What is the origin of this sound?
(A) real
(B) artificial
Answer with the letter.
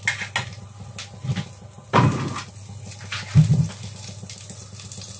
A